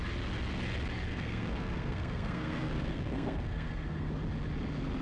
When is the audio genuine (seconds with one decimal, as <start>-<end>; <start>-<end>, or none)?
0.0-1.1; 4.1-5.0

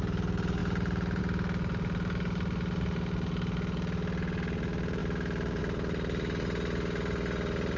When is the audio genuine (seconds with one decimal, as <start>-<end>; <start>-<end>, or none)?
0.0-7.8

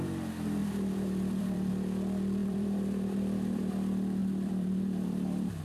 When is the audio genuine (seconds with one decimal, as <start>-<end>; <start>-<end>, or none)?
0.0-0.6; 1.7-2.4; 3.7-4.2

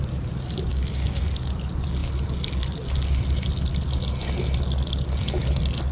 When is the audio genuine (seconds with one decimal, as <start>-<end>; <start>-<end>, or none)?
0.0-0.7; 1.2-5.9

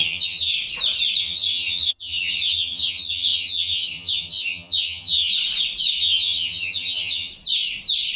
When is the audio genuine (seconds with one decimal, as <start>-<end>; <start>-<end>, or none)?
0.5-1.2; 5.3-6.0; 7.3-8.2

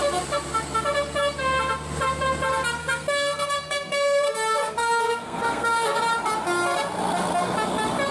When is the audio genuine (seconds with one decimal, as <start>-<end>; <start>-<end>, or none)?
0.0-2.8; 6.0-8.1

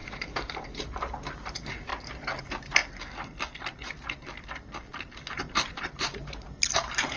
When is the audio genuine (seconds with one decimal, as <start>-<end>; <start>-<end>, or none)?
1.9-2.4; 2.8-5.3

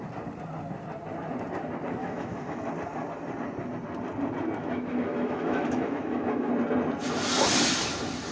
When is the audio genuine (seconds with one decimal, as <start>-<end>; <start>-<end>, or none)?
0.0-2.0; 2.7-4.6; 6.5-8.3